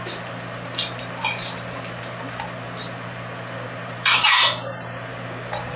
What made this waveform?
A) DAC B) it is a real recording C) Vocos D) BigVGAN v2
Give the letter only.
B